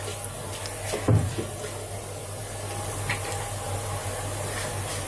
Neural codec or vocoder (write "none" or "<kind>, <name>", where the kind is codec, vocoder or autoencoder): none